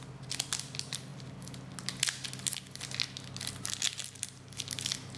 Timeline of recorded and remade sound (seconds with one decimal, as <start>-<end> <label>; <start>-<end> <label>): 0.0-5.2 recorded